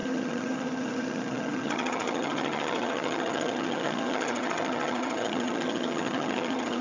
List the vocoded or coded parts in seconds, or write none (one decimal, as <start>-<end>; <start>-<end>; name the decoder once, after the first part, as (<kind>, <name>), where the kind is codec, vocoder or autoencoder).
0.0-6.8 (vocoder, HiFi-GAN)